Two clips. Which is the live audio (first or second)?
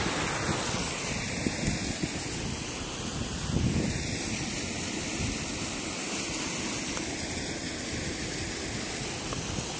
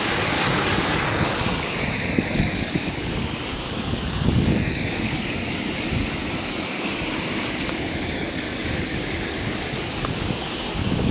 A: first